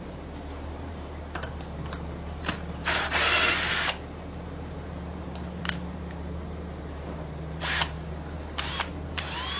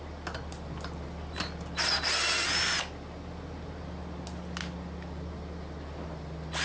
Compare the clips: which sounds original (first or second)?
second